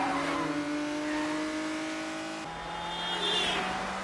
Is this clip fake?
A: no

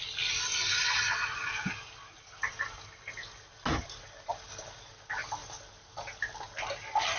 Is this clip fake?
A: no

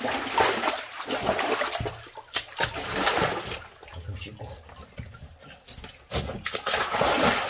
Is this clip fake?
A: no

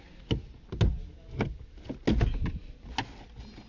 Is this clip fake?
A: no